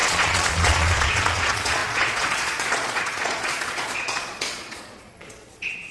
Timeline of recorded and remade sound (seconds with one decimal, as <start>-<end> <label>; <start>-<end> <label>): 0.0-5.9 remade